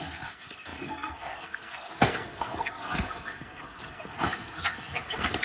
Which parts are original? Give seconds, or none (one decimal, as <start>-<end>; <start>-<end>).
none